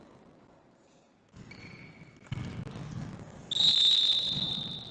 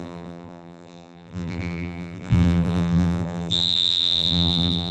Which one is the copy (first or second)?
second